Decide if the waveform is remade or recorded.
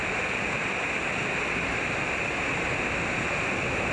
recorded